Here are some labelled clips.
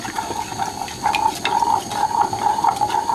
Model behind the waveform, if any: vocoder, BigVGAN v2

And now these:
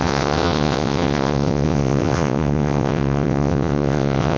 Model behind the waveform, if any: vocoder, WaveNeXt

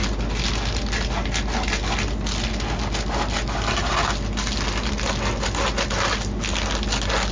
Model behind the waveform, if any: none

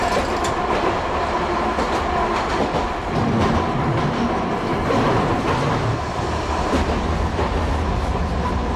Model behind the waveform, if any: none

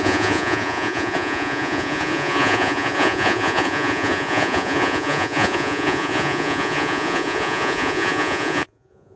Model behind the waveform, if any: vocoder, Vocos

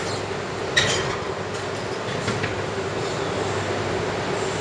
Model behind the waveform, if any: none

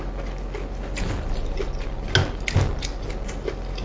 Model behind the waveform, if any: none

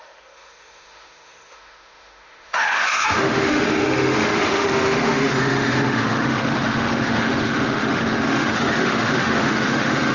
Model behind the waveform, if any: autoencoder, DAC-VAE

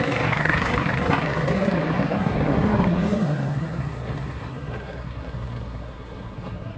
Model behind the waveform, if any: codec, SNAC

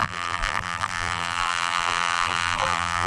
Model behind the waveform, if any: vocoder, BigVGAN v2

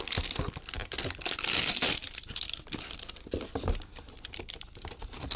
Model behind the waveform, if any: none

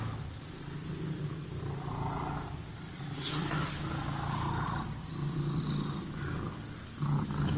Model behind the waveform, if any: none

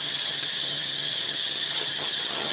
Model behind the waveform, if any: vocoder, HiFi-GAN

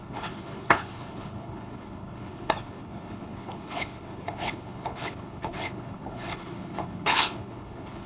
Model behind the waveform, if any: codec, HILCodec